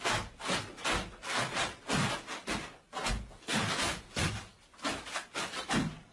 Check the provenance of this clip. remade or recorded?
recorded